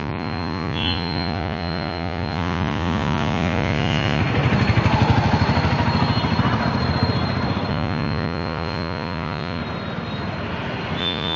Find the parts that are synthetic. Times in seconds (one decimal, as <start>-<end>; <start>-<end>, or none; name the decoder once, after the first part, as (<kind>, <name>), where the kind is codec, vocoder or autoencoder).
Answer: 0.0-4.2 (vocoder, Vocos); 7.7-9.6; 11.0-11.4